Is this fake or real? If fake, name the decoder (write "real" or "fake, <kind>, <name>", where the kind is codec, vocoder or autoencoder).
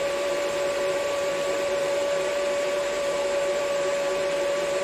fake, vocoder, BigVGAN v2